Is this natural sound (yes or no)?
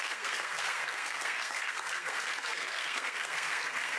no